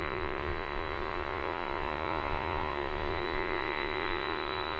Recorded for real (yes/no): no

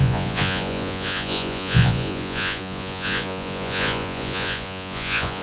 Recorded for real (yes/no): no